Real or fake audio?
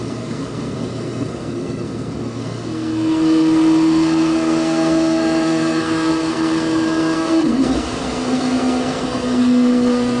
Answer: fake